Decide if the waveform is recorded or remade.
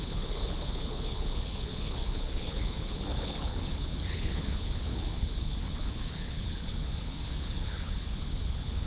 remade